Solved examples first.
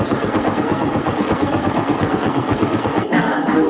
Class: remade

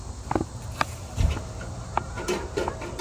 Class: remade